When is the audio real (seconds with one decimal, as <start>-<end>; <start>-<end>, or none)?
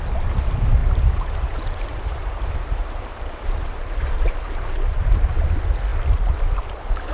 0.0-0.8; 5.1-7.1